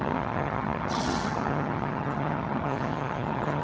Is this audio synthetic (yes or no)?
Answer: yes